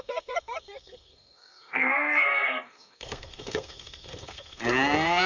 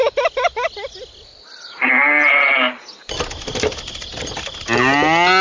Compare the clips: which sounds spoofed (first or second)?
first